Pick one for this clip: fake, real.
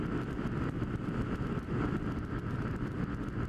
real